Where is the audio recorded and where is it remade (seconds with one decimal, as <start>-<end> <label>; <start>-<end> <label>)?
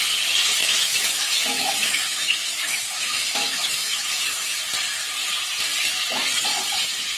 0.0-0.6 recorded; 0.6-4.6 remade; 4.6-7.2 recorded